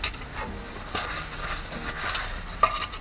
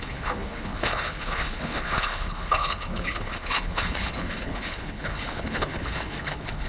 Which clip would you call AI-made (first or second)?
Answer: second